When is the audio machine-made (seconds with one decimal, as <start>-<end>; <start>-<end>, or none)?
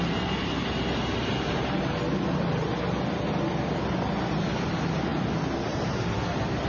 none